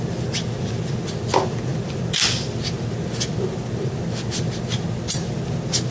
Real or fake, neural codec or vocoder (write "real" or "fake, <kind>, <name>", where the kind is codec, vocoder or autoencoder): real